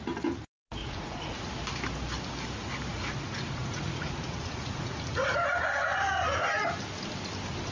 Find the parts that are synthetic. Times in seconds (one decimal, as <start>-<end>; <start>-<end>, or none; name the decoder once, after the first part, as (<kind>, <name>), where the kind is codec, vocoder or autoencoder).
0.8-1.5 (vocoder, Vocos); 2.9-5.0